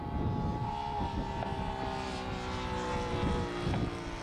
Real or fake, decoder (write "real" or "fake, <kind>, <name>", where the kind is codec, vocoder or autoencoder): real